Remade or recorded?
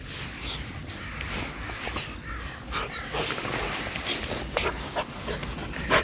recorded